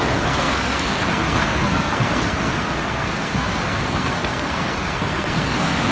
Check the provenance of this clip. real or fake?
fake